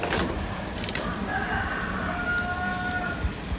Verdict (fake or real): real